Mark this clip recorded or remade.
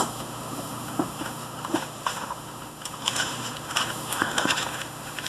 remade